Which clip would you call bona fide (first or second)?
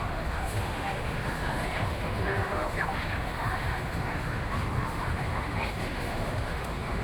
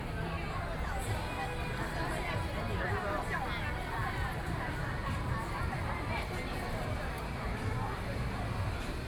second